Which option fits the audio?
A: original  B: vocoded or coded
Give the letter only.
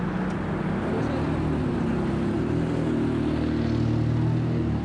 A